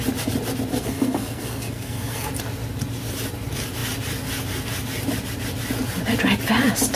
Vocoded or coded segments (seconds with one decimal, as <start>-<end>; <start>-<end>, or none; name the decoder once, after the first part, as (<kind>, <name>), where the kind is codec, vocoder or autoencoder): 0.7-2.3 (codec, SNAC)